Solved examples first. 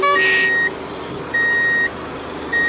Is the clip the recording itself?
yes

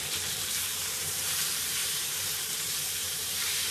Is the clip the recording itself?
no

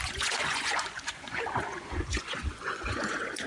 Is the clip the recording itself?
no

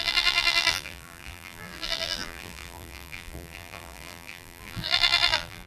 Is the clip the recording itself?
no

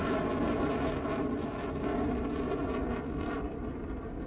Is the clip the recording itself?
yes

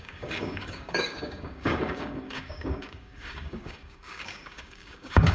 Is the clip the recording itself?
no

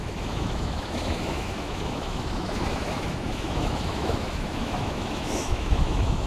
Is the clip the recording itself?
no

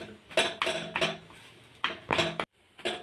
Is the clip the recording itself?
yes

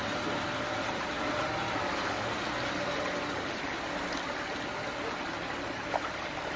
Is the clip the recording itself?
yes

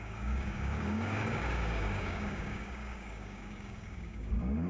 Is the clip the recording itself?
no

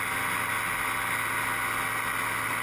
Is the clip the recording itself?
yes